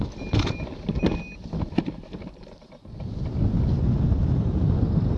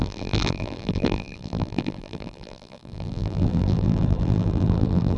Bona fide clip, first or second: first